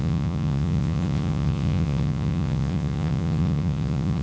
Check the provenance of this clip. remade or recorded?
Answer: remade